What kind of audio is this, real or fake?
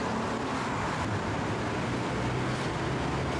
real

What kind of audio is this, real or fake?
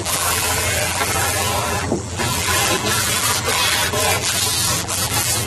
fake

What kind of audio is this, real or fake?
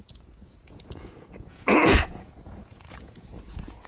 fake